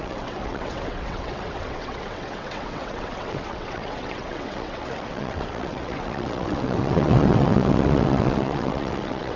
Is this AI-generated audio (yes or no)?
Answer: yes